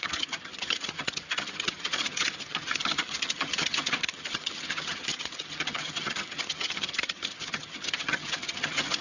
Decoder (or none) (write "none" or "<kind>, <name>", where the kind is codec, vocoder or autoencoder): vocoder, HiFi-GAN